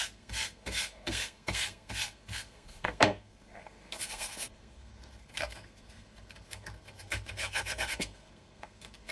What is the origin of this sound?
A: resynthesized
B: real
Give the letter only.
A